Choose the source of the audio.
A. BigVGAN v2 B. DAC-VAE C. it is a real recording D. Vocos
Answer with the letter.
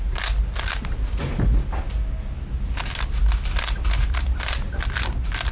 C